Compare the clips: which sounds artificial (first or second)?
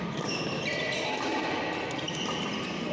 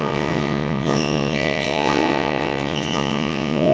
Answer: second